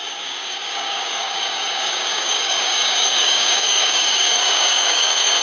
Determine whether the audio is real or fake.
fake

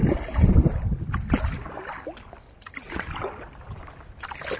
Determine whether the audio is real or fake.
real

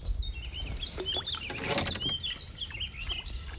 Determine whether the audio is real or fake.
real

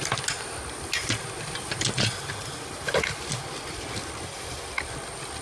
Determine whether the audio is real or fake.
real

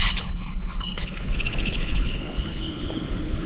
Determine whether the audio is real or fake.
fake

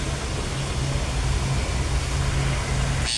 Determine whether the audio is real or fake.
real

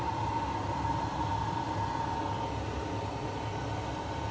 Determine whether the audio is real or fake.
real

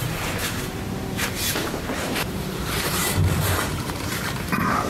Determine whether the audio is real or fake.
fake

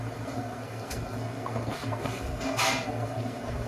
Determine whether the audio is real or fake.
fake